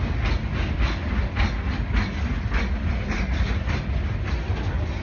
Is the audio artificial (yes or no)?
no